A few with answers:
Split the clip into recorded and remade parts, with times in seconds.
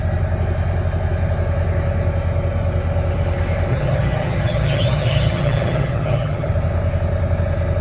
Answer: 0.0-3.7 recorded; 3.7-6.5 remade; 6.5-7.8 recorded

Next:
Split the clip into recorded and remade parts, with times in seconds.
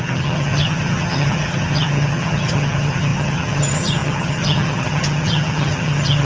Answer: 0.0-6.2 remade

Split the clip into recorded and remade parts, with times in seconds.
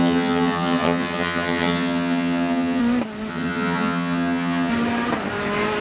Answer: 0.0-2.8 remade; 2.8-3.3 recorded; 3.3-4.7 remade; 4.7-5.8 recorded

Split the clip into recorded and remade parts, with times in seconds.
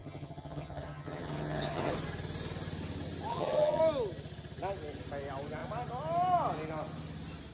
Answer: 0.0-1.9 remade; 1.9-3.3 recorded; 3.3-3.8 remade; 3.8-7.5 recorded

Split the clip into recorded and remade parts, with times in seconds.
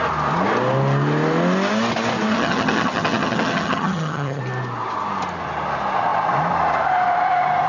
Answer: 0.0-2.3 recorded; 2.3-4.4 remade; 4.4-7.7 recorded